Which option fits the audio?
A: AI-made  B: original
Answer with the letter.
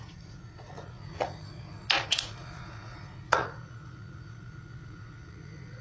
A